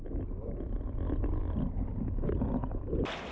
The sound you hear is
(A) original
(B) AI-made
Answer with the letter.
A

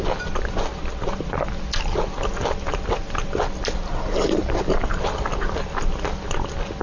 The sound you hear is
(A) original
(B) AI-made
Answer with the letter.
A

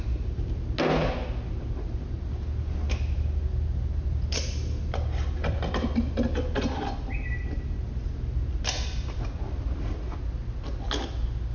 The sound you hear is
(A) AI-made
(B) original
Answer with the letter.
B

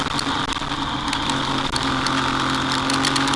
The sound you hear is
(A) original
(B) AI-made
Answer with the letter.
A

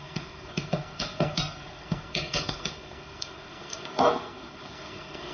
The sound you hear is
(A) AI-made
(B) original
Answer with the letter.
A